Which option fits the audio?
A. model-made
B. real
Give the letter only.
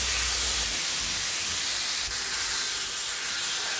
B